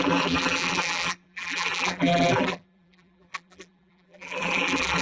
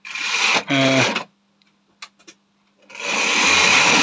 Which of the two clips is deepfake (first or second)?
first